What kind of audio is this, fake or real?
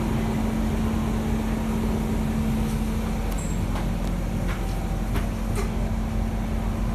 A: real